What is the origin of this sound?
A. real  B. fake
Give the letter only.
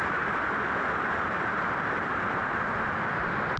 A